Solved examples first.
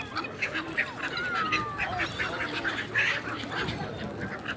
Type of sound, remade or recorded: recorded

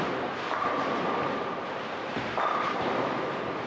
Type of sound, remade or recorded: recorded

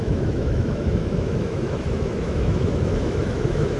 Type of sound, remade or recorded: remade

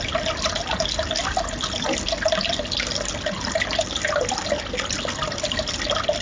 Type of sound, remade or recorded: recorded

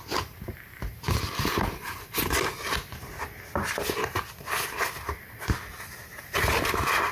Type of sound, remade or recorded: recorded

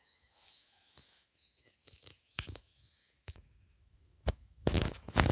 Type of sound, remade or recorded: remade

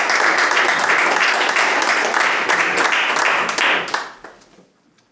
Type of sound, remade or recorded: recorded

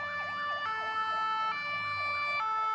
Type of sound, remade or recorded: recorded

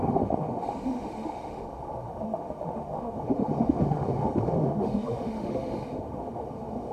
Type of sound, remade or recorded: remade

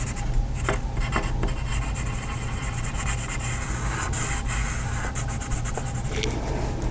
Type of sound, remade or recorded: recorded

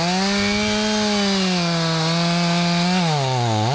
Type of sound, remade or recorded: recorded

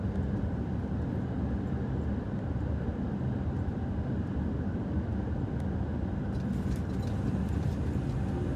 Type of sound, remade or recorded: recorded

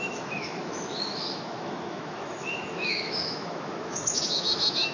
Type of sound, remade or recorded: remade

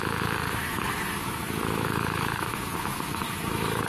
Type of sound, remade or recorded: remade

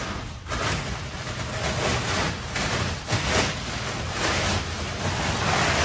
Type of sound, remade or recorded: recorded